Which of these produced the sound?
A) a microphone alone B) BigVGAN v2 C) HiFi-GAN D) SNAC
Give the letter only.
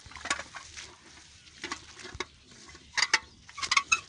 A